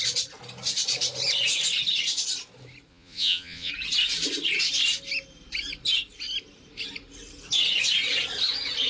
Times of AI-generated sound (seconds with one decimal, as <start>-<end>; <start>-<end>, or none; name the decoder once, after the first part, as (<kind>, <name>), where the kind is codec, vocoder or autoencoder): 2.9-3.7 (vocoder, Vocos)